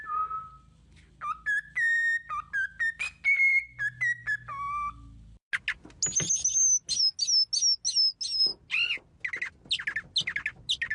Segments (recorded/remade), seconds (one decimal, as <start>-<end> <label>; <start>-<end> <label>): 0.0-10.9 recorded